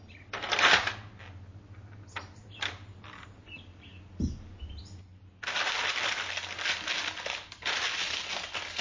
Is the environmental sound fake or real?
real